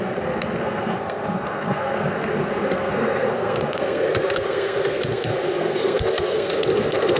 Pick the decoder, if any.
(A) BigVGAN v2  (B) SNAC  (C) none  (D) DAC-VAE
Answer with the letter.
B